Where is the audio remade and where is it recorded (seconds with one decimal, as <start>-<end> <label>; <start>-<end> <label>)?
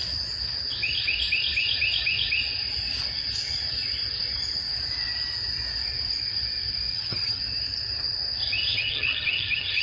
0.0-6.9 recorded; 6.9-7.4 remade; 7.4-8.7 recorded; 8.7-9.8 remade